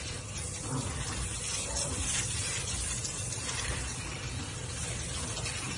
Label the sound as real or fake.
real